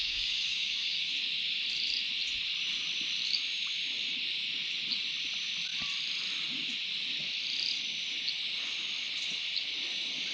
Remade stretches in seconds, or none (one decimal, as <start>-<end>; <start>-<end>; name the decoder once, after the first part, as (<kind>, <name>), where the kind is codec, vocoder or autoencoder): 0.0-1.1 (codec, DAC)